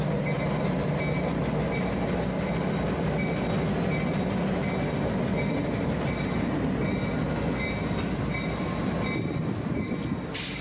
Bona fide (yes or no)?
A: yes